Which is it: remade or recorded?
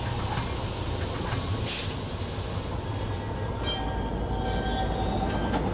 recorded